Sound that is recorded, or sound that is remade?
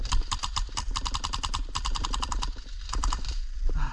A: recorded